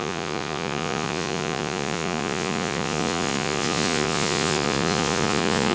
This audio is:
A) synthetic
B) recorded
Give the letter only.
A